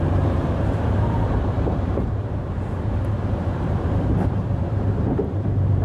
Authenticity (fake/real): fake